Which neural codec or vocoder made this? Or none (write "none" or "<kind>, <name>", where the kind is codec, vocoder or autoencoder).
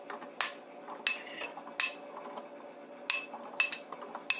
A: none